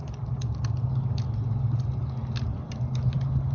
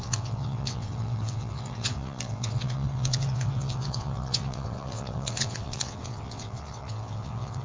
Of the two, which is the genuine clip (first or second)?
first